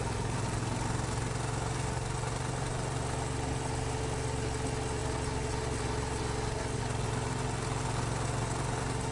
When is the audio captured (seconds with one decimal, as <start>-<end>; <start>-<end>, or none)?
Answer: 0.0-9.1